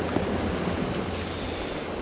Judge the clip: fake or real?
real